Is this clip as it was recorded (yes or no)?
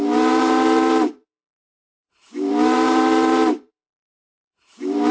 no